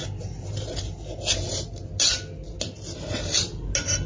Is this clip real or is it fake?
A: real